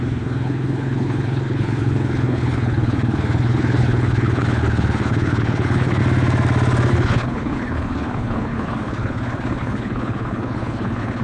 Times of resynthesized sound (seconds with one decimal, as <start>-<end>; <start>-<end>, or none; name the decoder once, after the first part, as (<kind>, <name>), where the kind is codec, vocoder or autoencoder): 0.0-6.0 (codec, HILCodec); 6.9-11.2